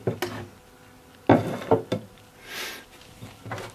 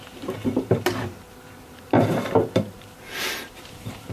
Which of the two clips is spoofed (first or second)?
second